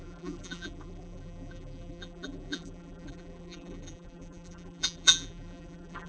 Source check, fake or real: fake